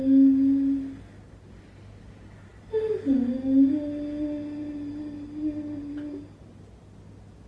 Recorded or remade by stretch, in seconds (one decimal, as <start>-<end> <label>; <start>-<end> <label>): 0.0-7.5 recorded